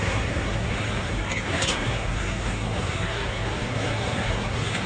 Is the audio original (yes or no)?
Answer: no